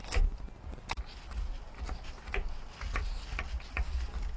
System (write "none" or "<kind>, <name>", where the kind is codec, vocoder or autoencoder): none